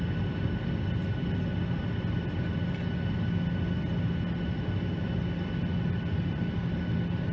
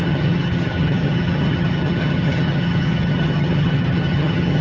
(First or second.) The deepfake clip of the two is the second